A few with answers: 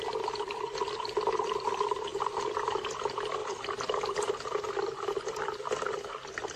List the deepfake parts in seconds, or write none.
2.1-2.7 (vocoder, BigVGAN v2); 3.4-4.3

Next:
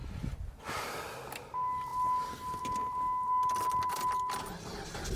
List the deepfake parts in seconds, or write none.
none

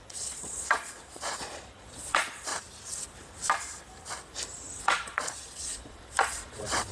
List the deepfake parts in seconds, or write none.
0.0-2.5 (vocoder, Vocos); 4.8-6.9

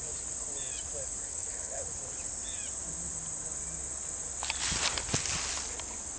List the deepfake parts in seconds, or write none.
1.3-1.8 (codec, HILCodec)

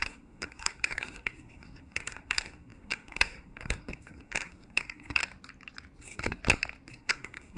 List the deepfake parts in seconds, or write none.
0.0-5.2 (codec, SNAC); 6.0-6.4; 6.9-7.6

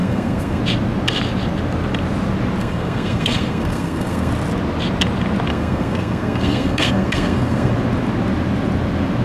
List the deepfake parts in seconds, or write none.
0.0-0.6 (codec, SNAC); 2.6-4.3; 5.5-7.7